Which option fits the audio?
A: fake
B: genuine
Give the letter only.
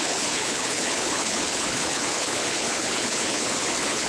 A